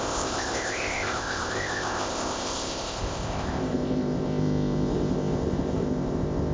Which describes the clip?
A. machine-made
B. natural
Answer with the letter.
A